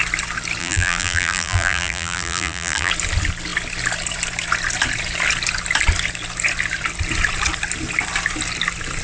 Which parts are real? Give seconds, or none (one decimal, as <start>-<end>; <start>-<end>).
0.0-0.6; 2.9-9.0